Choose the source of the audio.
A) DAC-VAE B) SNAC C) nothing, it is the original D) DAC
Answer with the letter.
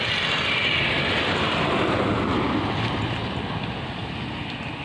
C